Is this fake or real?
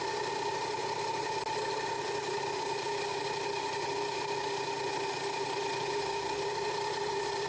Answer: real